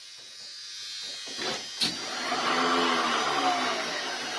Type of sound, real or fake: real